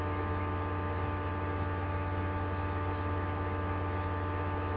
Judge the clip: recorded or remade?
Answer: recorded